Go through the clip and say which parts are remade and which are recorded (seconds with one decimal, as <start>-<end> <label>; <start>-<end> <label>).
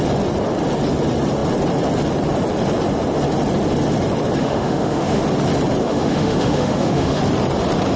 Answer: 0.0-4.4 recorded; 4.4-5.2 remade; 5.2-5.8 recorded; 5.8-7.2 remade; 7.2-8.0 recorded